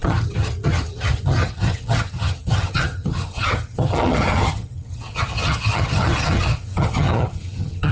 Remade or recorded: remade